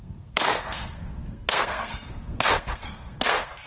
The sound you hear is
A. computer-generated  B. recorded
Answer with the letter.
A